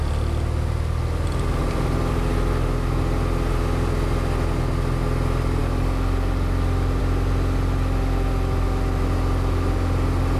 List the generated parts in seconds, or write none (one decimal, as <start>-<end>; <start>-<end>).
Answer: none